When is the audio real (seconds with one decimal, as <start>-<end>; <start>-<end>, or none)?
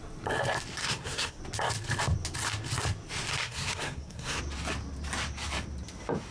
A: 0.0-0.8; 1.4-3.4; 4.4-6.3